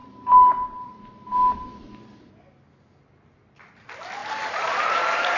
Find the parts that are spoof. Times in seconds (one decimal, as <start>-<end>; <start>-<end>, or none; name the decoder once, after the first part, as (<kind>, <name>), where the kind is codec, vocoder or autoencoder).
0.0-1.8 (vocoder, BigVGAN v2); 4.2-5.4